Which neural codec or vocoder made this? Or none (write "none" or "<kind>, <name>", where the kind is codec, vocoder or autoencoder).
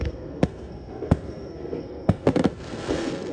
codec, SNAC